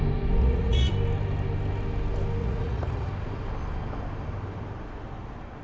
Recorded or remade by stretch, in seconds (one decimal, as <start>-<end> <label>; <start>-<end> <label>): 0.0-0.4 recorded; 0.4-0.9 remade; 0.9-2.4 recorded; 2.4-3.1 remade; 3.1-5.6 recorded